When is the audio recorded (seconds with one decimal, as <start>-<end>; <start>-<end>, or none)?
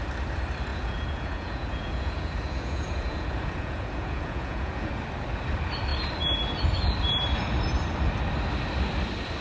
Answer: 0.0-0.7; 4.9-9.4